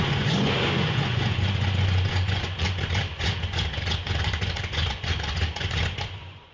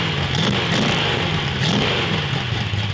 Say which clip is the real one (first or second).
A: second